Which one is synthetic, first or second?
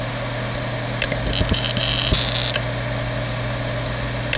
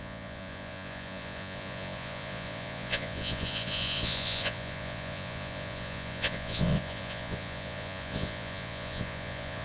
second